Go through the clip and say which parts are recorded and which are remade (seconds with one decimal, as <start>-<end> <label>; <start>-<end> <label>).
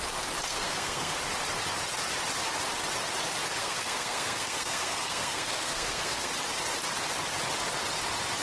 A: 0.0-0.5 recorded; 0.5-1.2 remade; 1.2-3.6 recorded; 3.6-6.3 remade; 6.3-8.4 recorded